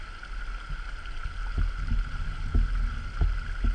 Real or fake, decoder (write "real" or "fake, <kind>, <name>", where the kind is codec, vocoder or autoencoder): real